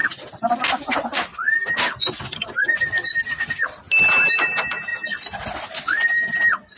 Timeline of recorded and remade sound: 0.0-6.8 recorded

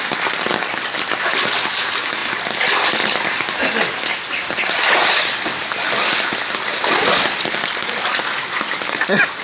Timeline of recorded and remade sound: 0.0-9.4 recorded

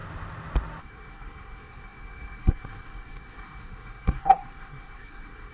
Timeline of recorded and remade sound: 0.0-0.8 recorded; 0.8-5.5 remade

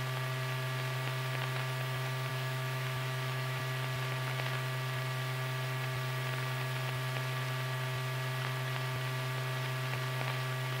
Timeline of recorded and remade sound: 0.0-2.3 recorded; 2.3-3.6 remade; 3.6-10.8 recorded

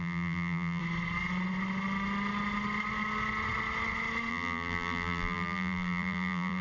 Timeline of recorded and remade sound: 0.0-0.8 remade; 0.8-4.3 recorded; 4.3-6.6 remade